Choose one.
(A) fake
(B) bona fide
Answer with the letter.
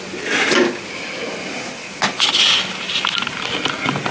B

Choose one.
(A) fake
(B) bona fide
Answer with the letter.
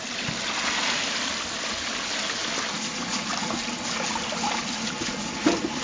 B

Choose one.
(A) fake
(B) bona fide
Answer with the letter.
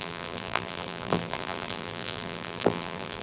A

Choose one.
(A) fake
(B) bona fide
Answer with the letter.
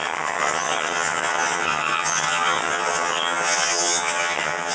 A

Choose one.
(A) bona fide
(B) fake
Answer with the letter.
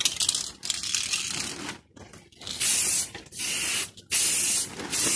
A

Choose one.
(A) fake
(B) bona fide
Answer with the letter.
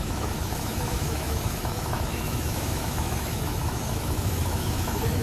A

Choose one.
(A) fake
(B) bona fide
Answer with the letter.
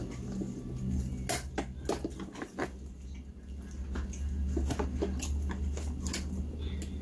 B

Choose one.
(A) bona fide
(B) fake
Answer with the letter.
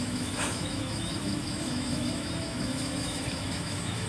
B